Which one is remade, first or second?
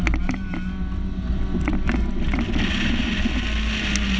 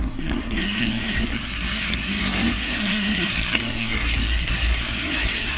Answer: second